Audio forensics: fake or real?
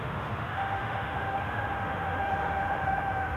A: fake